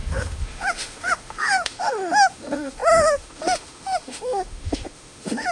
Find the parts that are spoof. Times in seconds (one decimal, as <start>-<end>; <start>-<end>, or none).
0.0-5.5